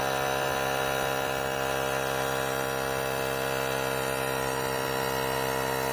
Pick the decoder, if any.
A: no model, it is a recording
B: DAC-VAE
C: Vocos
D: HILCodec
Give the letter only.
A